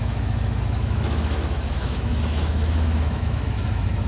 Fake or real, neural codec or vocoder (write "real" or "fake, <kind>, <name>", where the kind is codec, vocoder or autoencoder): fake, autoencoder, DAC-VAE